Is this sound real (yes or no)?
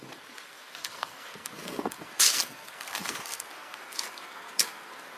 no